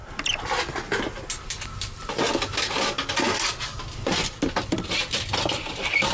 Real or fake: real